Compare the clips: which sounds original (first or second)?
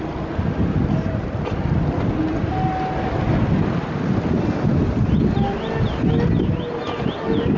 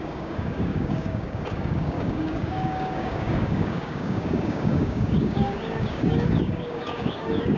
first